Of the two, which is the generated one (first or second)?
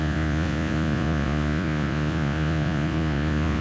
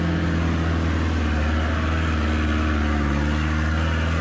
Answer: first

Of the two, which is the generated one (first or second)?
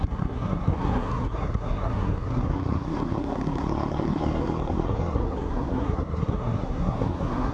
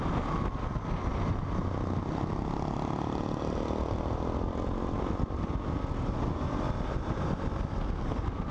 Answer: first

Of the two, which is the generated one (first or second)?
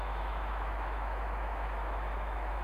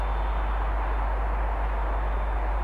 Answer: first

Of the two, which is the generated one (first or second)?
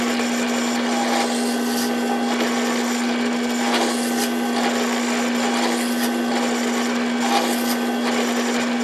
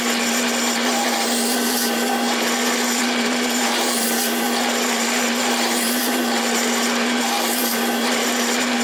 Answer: second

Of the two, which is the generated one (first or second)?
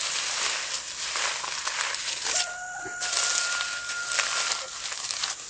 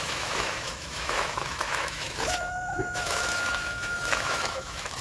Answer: second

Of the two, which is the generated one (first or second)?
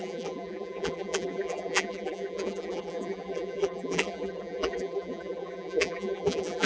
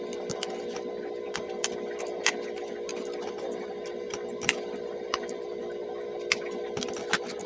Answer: first